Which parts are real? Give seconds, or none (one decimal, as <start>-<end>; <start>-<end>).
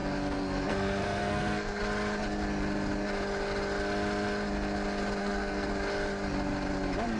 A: 1.8-5.2; 5.7-7.2